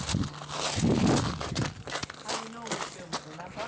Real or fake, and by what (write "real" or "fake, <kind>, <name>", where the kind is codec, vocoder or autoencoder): real